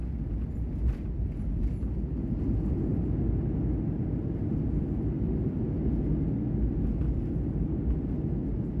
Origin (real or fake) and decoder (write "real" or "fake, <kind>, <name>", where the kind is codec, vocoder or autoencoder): real